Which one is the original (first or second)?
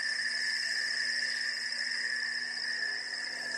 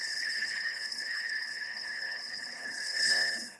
first